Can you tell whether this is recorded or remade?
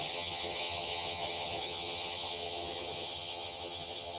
remade